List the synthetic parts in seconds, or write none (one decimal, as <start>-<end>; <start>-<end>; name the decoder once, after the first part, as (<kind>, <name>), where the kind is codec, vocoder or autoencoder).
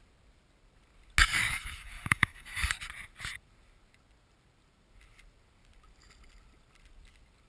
1.2-2.8 (codec, DAC)